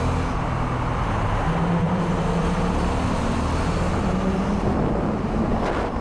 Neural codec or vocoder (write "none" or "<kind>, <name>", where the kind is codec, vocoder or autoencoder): none